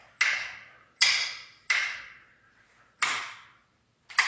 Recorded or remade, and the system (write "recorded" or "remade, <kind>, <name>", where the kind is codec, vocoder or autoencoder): recorded